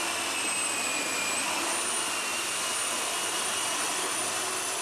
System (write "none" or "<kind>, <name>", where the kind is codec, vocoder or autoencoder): none